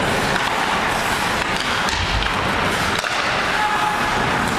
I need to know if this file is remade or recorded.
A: recorded